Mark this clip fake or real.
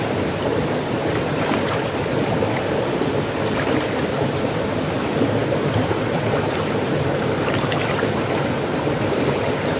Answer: real